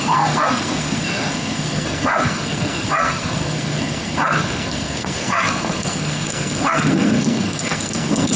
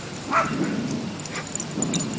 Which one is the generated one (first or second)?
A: first